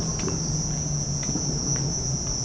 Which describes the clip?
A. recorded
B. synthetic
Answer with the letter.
A